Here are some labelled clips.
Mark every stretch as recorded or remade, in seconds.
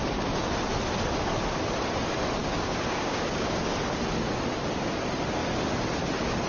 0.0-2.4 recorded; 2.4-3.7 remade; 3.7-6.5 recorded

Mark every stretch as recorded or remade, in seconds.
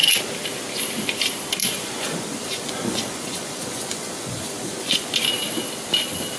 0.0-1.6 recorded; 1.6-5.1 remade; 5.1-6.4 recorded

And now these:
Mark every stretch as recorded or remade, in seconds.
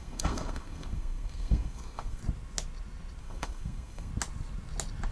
0.0-2.2 remade; 2.2-3.2 recorded; 3.2-4.1 remade; 4.1-5.1 recorded